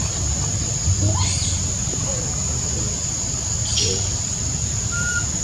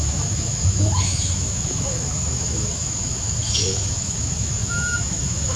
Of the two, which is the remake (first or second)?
second